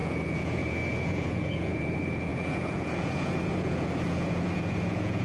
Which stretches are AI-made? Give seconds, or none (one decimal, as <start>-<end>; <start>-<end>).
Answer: 0.0-5.2